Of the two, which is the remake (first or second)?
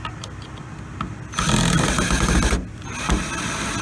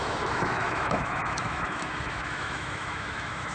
second